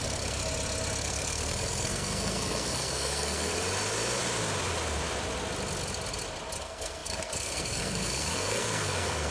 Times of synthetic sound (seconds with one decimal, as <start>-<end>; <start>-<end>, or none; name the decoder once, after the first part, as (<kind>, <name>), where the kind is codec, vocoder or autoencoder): 0.0-0.4 (codec, SNAC); 1.0-3.5; 6.6-9.3